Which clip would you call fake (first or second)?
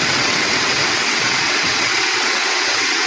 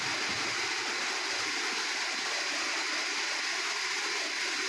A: first